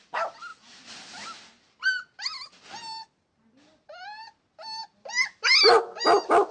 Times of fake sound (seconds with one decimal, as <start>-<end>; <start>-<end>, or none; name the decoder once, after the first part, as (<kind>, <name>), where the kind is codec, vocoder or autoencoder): none